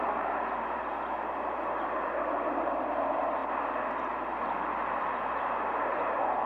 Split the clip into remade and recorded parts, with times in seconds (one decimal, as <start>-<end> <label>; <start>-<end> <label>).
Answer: 0.0-3.4 remade; 3.4-4.8 recorded; 4.8-6.5 remade